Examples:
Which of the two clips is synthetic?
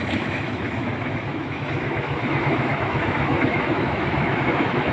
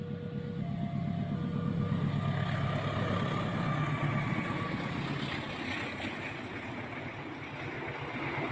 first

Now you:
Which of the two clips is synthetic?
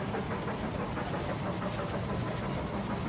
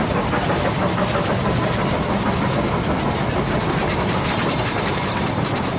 second